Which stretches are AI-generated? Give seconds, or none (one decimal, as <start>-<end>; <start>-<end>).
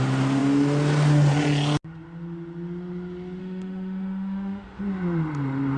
3.4-4.8